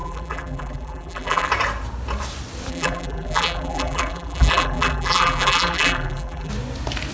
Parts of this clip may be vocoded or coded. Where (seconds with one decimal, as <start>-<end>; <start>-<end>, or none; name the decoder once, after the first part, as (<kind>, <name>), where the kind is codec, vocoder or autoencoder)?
0.0-1.5 (vocoder, BigVGAN v2); 2.7-6.5